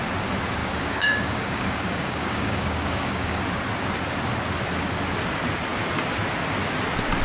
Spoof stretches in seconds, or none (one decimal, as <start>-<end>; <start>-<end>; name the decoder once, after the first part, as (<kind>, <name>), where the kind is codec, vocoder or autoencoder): 0.6-3.4 (codec, DAC)